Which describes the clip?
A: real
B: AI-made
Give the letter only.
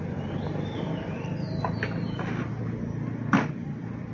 A